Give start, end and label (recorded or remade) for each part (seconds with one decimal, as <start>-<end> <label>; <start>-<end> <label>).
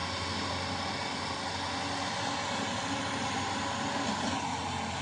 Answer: 0.0-5.0 recorded